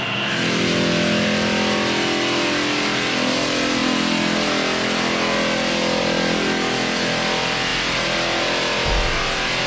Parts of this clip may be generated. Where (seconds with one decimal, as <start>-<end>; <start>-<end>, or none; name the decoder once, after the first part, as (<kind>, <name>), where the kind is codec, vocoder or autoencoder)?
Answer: none